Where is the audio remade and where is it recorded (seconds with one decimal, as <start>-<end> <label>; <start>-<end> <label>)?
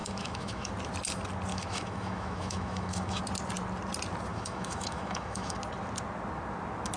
0.0-0.7 remade; 0.7-1.5 recorded; 1.5-3.2 remade; 3.2-4.3 recorded; 4.3-5.6 remade; 5.6-7.0 recorded